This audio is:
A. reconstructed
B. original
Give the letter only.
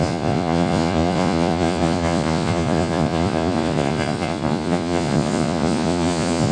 A